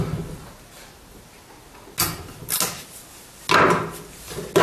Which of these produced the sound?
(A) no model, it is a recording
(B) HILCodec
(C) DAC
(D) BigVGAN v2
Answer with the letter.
A